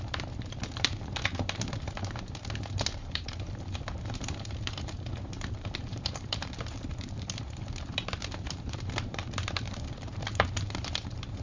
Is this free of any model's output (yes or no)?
no